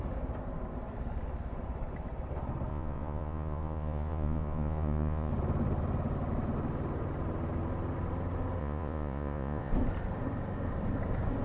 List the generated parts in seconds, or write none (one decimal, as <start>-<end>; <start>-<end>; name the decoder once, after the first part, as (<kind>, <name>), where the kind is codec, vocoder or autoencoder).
2.7-5.3 (vocoder, Vocos); 8.6-9.7